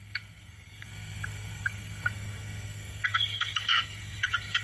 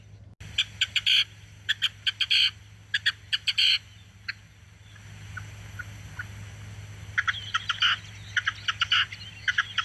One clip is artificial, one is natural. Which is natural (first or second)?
second